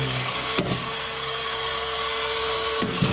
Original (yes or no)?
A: no